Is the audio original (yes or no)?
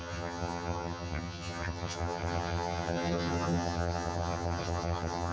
no